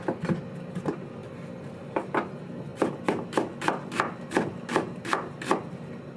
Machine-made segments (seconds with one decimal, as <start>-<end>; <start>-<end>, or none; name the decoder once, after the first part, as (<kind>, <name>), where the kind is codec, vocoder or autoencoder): none